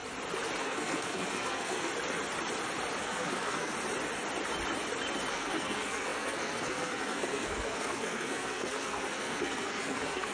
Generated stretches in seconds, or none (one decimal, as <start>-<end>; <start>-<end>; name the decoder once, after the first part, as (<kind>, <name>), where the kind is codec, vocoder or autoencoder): 0.6-1.9 (codec, SNAC); 3.0-3.7; 5.3-10.3